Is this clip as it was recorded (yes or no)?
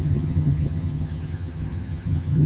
no